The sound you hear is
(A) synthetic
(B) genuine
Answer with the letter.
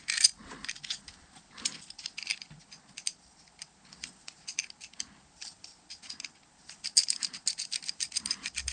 B